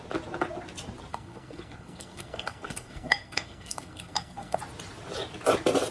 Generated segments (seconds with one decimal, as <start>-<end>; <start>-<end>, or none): 1.1-4.6